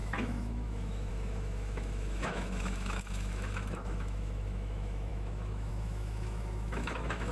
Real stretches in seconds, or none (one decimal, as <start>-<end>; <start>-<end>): none